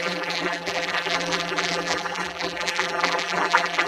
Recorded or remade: remade